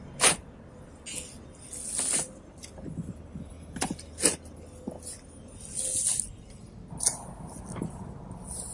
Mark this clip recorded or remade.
recorded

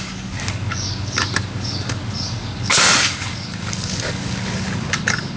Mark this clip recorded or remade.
remade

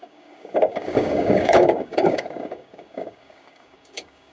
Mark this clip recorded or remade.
remade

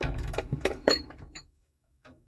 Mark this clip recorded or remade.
remade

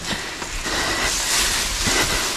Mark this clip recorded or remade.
recorded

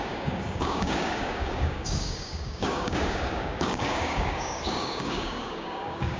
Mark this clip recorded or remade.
remade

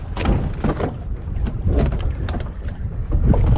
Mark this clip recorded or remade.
recorded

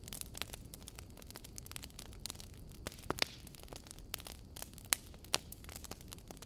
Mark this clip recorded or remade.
recorded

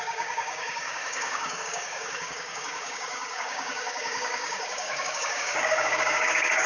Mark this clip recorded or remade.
remade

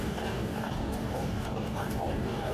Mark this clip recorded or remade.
remade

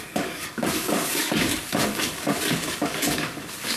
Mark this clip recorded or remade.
remade